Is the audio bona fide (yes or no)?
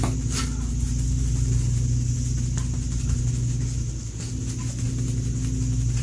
yes